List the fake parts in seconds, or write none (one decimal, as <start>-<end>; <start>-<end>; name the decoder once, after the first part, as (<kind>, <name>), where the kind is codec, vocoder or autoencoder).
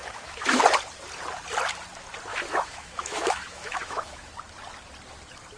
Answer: 0.0-0.6 (autoencoder, DAC-VAE); 2.3-4.3